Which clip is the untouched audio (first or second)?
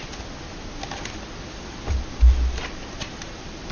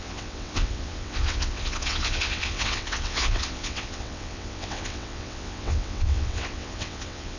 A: first